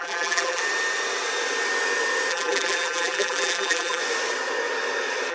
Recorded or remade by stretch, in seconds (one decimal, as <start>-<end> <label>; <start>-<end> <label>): 0.0-0.6 remade; 0.6-2.3 recorded; 2.3-4.0 remade; 4.0-5.3 recorded